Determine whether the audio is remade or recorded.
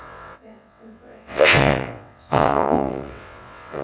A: remade